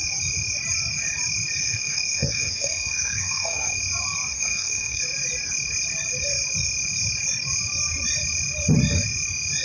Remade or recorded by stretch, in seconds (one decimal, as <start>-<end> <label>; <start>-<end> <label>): 0.0-1.6 recorded; 1.6-3.8 remade; 3.8-4.3 recorded; 4.3-5.0 remade; 5.0-9.6 recorded